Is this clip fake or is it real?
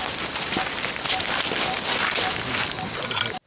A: real